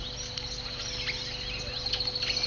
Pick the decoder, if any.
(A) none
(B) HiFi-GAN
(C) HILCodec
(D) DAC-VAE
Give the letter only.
A